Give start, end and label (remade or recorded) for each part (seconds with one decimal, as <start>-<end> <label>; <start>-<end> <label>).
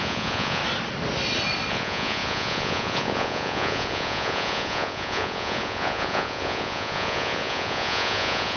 0.0-0.6 remade; 0.6-1.7 recorded; 1.7-8.6 remade